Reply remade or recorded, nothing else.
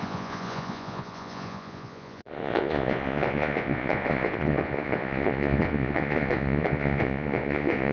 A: remade